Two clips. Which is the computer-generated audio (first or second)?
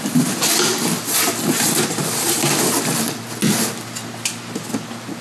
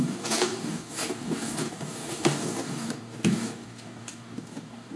second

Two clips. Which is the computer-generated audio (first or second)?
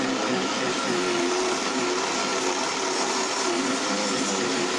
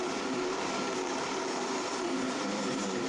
second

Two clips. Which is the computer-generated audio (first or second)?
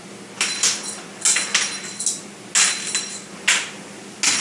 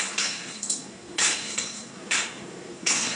second